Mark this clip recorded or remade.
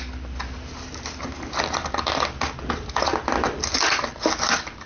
recorded